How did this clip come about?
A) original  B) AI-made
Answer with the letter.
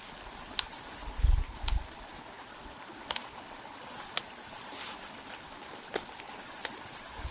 A